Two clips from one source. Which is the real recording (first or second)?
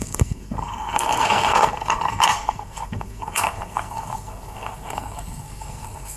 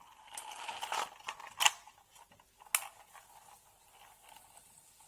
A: second